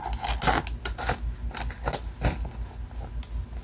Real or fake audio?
real